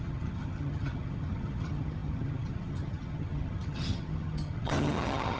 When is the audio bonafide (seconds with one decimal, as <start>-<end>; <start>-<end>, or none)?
none